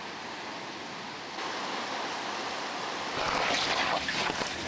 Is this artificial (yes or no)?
no